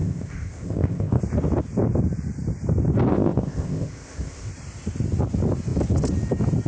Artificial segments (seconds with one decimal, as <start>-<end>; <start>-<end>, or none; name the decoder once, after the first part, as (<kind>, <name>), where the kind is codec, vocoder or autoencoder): 0.0-1.2 (codec, ZipCodec); 3.1-4.5